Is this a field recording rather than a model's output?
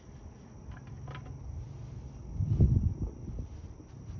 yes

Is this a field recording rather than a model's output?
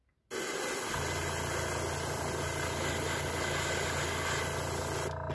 yes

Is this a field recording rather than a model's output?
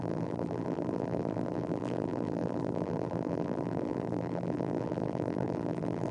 no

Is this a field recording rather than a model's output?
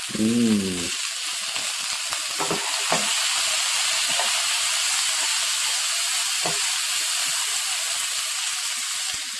yes